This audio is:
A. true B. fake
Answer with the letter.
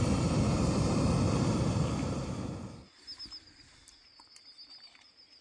A